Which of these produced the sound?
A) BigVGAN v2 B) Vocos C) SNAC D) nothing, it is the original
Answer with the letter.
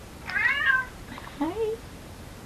A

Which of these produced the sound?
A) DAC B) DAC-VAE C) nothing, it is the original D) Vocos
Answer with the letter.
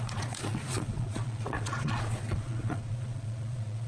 D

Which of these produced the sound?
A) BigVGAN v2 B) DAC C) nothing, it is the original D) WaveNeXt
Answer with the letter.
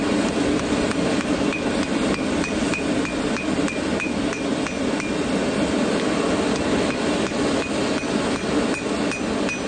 C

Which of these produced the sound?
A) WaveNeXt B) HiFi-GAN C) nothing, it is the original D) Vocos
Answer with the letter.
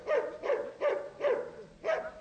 C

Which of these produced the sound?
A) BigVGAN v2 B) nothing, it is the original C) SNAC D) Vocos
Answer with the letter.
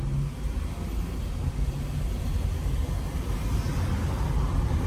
B